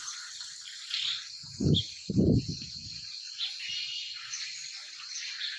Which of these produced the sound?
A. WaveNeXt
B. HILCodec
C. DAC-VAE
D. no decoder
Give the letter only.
D